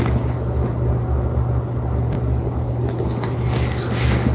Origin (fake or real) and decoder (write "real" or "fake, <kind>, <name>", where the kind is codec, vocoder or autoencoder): real